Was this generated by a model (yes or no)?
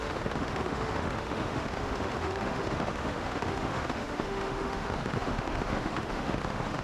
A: yes